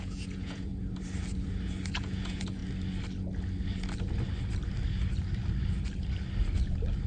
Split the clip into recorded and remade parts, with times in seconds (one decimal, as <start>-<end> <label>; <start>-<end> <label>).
0.0-0.7 remade; 0.7-1.9 recorded; 1.9-2.6 remade; 2.6-7.1 recorded